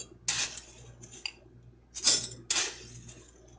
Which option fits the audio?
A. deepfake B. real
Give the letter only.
B